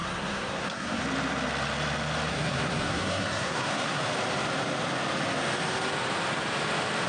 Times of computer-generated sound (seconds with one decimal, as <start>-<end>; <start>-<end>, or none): 0.0-1.0; 2.3-4.0